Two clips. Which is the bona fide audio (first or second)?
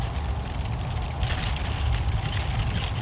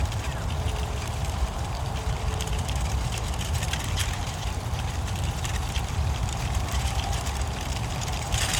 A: first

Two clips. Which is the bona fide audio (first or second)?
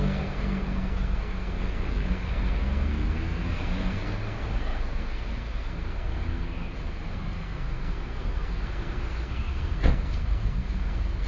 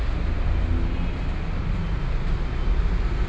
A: second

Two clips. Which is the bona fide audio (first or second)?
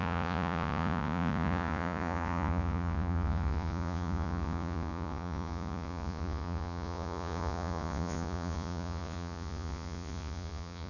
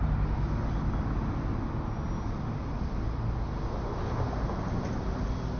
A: second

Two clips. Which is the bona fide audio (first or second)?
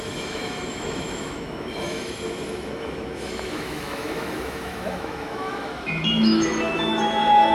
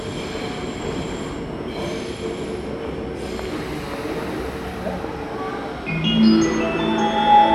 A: second